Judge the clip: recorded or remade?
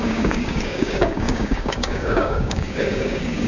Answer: remade